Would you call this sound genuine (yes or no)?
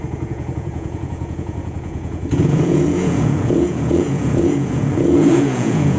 no